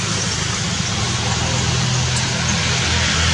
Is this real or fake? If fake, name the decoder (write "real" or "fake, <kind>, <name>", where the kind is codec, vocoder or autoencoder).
real